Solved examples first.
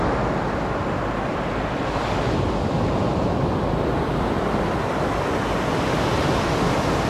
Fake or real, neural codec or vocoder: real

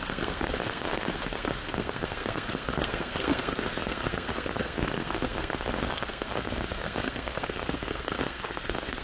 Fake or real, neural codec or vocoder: fake, codec, SNAC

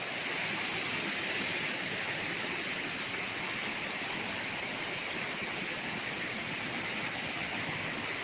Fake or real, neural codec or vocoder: real